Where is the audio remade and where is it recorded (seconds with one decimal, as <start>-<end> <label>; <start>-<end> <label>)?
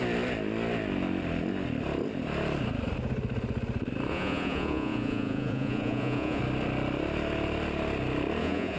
0.0-4.1 recorded; 4.1-6.4 remade; 6.4-8.4 recorded; 8.4-8.8 remade